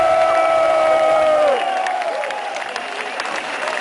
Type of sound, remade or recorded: remade